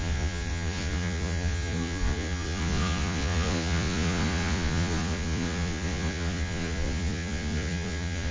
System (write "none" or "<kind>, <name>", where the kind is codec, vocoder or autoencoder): vocoder, Vocos